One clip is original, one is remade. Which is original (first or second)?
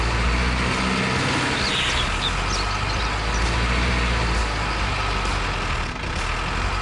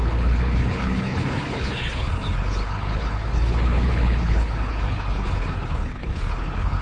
first